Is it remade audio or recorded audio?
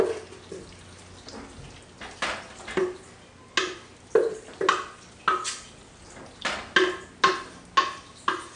recorded